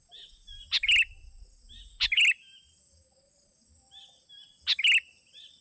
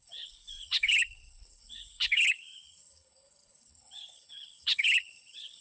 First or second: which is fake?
second